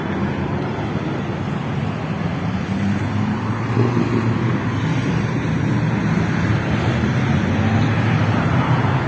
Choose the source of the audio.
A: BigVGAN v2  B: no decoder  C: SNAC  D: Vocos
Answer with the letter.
B